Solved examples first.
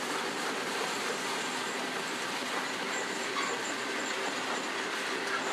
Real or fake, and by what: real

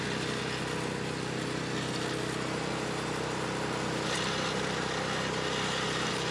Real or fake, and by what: real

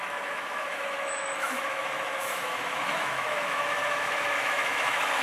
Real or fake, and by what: fake, autoencoder, DAC-VAE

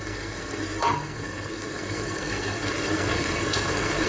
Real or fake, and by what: fake, codec, SNAC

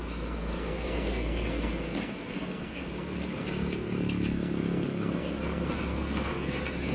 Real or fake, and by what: fake, codec, SNAC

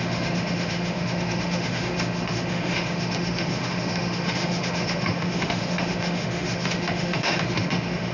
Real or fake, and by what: fake, autoencoder, DAC-VAE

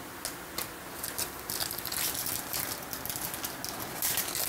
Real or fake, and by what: real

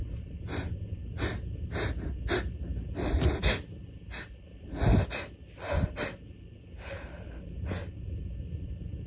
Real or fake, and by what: real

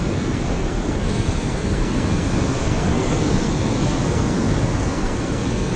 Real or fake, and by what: fake, codec, SNAC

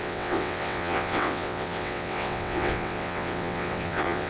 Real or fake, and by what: fake, vocoder, WaveNeXt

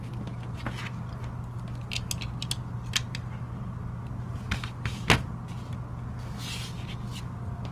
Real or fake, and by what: real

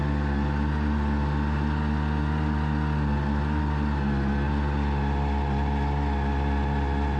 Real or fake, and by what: real